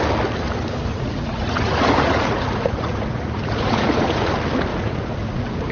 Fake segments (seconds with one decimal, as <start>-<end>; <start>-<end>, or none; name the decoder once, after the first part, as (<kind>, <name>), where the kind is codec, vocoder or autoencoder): 0.9-4.3 (vocoder, Vocos); 4.7-5.7